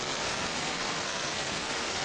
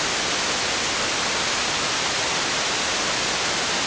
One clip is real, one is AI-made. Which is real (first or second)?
second